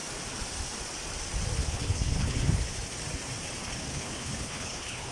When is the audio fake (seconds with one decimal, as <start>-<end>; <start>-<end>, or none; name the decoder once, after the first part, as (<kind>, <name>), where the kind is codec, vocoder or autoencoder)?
1.6-2.7 (codec, HILCodec); 3.9-5.1